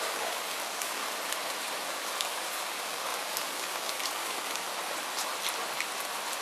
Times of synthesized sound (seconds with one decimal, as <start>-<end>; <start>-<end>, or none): 0.0-1.0; 1.8-4.7